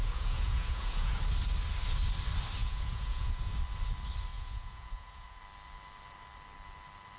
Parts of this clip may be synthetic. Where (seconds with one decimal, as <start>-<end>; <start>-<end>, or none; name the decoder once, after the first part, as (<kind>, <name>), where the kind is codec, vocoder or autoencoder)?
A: 0.0-1.1 (vocoder, Vocos); 2.6-3.5; 4.3-5.4